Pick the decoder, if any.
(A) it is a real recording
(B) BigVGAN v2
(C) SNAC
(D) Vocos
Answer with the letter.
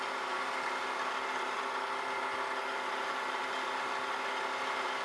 A